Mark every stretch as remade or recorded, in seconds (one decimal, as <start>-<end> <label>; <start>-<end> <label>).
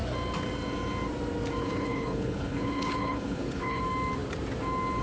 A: 0.0-1.6 recorded; 1.6-3.8 remade; 3.8-5.0 recorded